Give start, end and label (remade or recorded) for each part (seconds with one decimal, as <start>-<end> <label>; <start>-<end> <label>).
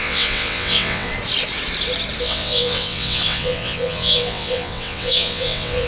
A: 0.0-1.1 remade; 1.1-2.2 recorded; 2.2-5.9 remade